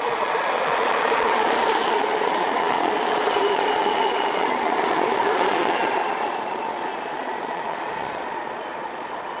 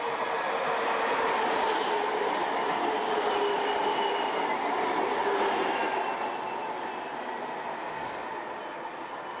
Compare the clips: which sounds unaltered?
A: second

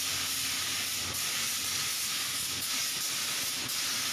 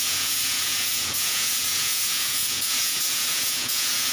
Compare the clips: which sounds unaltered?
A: first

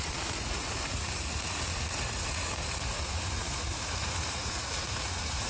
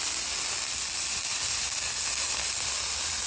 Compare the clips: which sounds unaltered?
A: second